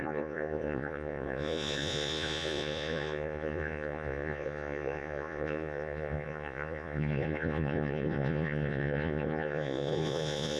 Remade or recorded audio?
remade